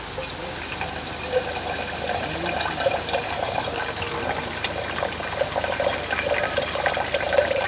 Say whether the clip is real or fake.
real